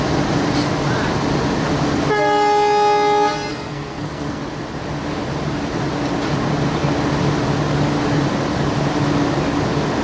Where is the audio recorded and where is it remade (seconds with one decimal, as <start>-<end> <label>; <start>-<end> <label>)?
0.0-3.5 recorded; 3.5-4.4 remade; 4.4-10.0 recorded